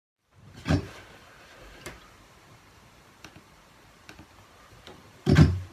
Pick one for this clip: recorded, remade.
remade